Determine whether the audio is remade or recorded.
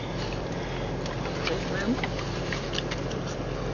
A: recorded